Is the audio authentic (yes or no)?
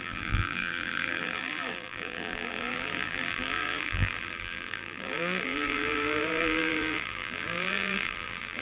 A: no